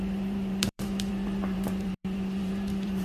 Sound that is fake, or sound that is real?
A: fake